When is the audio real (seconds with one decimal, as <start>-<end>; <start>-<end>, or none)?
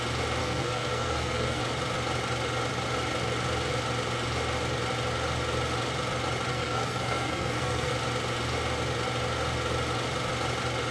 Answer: 0.0-0.4; 1.6-6.5; 7.9-10.9